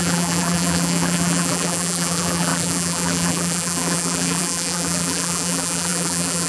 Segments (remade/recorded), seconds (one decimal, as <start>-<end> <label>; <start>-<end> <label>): 0.0-6.5 remade